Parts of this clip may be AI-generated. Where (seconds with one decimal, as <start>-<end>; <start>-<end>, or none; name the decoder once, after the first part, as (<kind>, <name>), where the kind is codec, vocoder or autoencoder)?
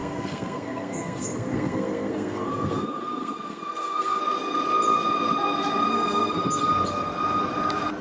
0.0-4.2 (codec, SNAC); 5.9-6.6